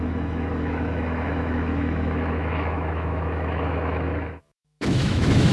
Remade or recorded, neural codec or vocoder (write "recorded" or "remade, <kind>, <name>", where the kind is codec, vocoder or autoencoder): remade, autoencoder, DAC-VAE